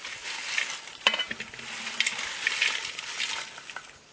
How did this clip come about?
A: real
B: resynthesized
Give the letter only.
A